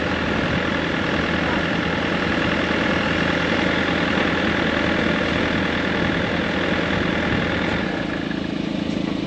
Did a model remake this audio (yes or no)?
no